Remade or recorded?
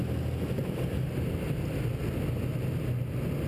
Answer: recorded